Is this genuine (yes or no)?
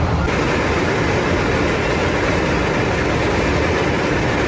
yes